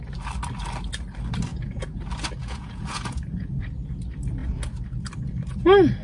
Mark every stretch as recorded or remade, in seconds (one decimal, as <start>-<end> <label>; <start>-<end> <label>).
0.0-1.5 recorded; 1.5-2.0 remade; 2.0-2.4 recorded; 2.4-3.7 remade; 3.7-6.0 recorded